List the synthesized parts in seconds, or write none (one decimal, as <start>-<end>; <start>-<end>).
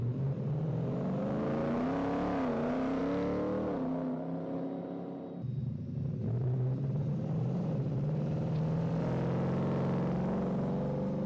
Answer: 2.5-3.0; 5.6-9.0